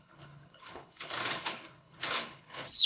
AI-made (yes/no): yes